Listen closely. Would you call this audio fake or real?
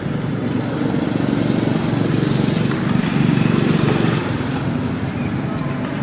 real